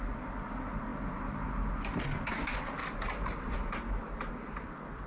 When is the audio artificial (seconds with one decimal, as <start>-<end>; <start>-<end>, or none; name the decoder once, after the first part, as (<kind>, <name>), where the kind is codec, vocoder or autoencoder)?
2.8-4.3 (vocoder, BigVGAN v2)